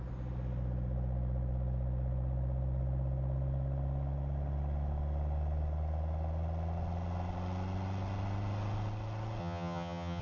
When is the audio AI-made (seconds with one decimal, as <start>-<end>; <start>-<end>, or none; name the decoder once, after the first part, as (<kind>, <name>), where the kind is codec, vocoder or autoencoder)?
9.4-10.2 (vocoder, HiFi-GAN)